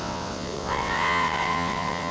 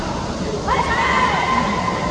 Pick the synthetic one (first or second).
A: first